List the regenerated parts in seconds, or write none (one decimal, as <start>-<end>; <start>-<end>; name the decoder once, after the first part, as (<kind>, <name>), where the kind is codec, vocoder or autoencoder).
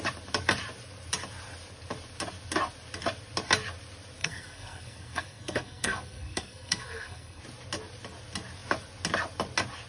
4.2-7.4 (codec, SNAC)